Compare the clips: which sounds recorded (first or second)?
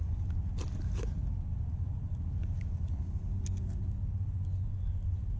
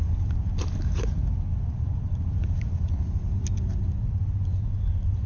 first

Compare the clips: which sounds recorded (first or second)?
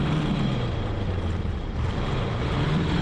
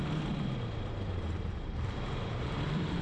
first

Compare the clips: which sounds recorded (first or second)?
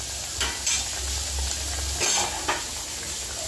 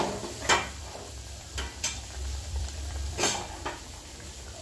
first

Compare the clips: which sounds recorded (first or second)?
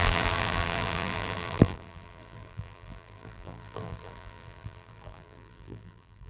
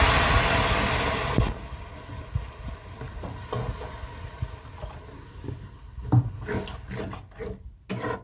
second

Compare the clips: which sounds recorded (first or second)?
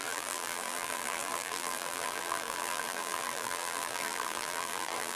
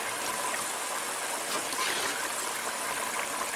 second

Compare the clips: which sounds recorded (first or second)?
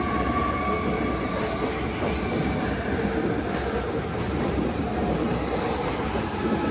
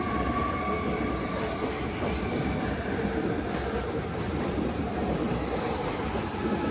first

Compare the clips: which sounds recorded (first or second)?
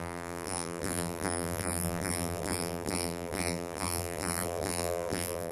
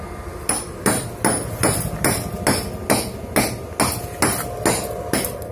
second